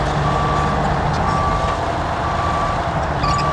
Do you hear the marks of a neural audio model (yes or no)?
no